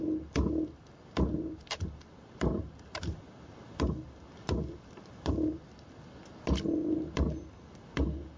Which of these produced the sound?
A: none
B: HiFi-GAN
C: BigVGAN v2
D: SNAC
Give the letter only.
A